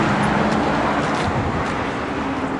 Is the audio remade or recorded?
recorded